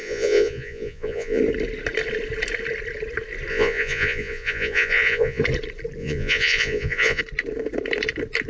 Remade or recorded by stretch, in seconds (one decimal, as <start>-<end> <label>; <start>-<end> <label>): 0.0-1.4 remade; 1.4-3.5 recorded; 3.5-5.4 remade; 5.4-6.0 recorded; 6.0-7.2 remade; 7.2-8.5 recorded